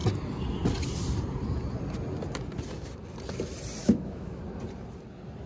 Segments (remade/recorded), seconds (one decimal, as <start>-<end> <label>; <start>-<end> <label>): 0.0-3.8 recorded; 3.8-4.4 remade; 4.4-5.5 recorded